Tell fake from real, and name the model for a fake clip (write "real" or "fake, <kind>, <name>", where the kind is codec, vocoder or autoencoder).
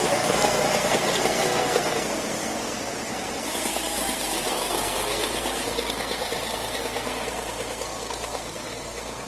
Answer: fake, codec, SNAC